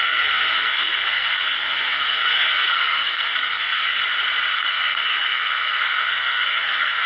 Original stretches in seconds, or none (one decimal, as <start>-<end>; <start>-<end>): 4.0-4.5